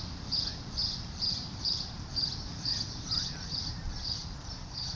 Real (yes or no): no